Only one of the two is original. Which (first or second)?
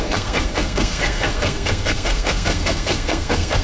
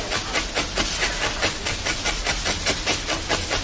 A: second